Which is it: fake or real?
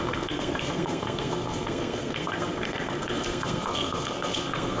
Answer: fake